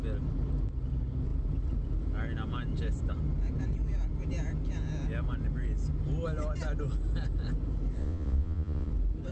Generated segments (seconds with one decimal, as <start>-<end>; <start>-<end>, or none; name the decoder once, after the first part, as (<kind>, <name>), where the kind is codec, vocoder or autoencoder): 8.0-8.9 (vocoder, Vocos)

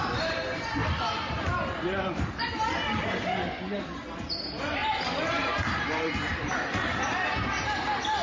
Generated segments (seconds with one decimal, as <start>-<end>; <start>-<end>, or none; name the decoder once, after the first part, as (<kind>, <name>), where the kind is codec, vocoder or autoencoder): 4.8-5.5 (vocoder, BigVGAN v2)

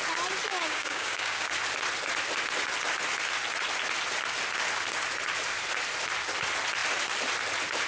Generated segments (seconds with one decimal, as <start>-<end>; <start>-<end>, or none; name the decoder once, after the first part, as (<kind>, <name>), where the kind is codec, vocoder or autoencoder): 0.5-1.5 (codec, DAC)

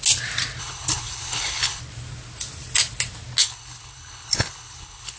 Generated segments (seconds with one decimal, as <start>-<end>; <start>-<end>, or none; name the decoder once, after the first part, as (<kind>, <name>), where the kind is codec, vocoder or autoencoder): 0.6-1.8 (codec, HILCodec); 3.4-5.2

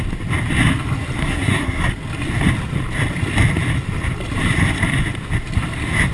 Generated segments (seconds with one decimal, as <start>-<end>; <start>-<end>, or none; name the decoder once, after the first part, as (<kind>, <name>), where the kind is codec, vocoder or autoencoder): 1.2-1.9 (codec, SNAC)